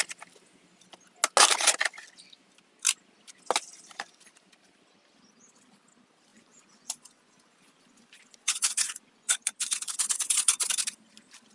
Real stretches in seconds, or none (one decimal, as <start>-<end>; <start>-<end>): 0.0-6.3; 10.7-11.5